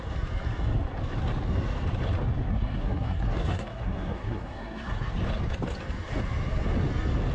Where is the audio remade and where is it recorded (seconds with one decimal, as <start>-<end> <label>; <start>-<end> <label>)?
0.0-2.5 recorded; 2.5-5.1 remade; 5.1-7.3 recorded